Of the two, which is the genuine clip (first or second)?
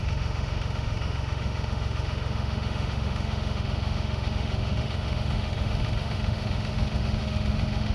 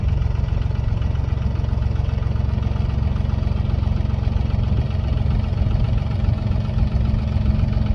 second